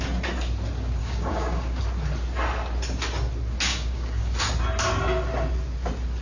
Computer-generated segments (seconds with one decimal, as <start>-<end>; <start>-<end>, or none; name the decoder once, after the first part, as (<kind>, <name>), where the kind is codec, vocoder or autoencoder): 1.0-1.8 (codec, DAC); 3.7-4.4